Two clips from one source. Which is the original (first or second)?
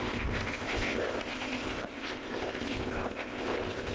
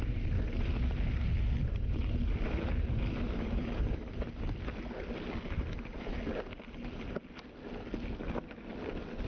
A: second